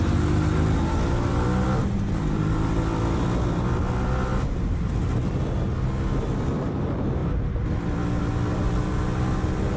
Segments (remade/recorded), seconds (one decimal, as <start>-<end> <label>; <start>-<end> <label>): 0.0-9.8 recorded

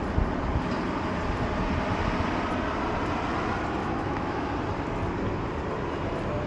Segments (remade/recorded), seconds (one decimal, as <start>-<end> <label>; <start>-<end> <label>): 0.0-3.8 recorded; 3.8-4.5 remade; 4.5-6.5 recorded

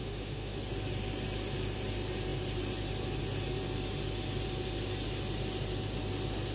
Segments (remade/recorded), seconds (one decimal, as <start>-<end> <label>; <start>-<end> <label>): 0.0-0.6 remade; 0.6-6.5 recorded

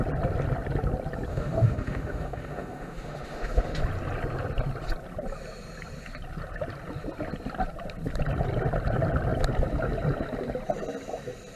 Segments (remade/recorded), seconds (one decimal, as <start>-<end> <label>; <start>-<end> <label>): 0.0-1.3 recorded; 1.3-3.8 remade; 3.8-11.6 recorded

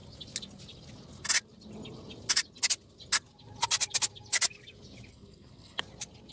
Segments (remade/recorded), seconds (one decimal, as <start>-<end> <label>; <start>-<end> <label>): 0.0-5.1 recorded; 5.1-5.8 remade; 5.8-6.3 recorded

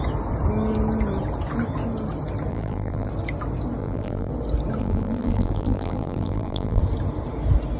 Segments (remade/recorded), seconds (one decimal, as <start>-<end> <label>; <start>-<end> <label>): 0.0-2.5 recorded; 2.5-3.1 remade; 3.1-3.8 recorded; 3.8-4.3 remade; 4.3-4.8 recorded; 4.8-6.8 remade; 6.8-7.8 recorded

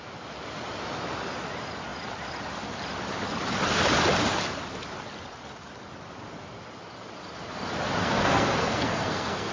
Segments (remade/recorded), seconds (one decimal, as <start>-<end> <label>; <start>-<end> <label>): 0.0-8.0 recorded; 8.0-9.5 remade